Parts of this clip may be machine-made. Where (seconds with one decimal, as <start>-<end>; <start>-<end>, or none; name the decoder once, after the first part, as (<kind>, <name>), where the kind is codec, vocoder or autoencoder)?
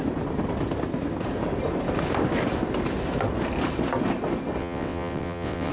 4.6-5.7 (vocoder, WaveNeXt)